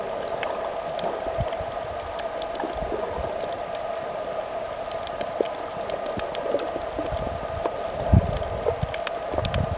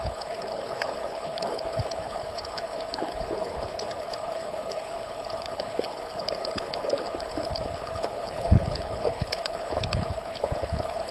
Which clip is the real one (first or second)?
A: first